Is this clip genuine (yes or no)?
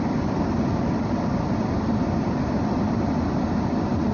yes